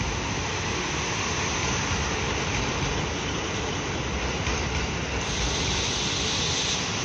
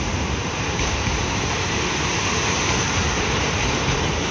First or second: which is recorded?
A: first